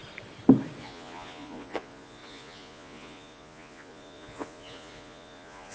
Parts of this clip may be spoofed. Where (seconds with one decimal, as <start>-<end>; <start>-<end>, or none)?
0.8-5.7